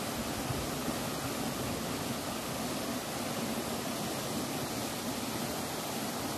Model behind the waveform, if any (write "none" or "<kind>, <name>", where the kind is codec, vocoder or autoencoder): none